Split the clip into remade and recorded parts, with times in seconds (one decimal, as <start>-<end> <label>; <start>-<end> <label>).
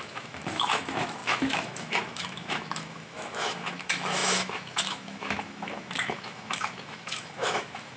0.0-8.0 remade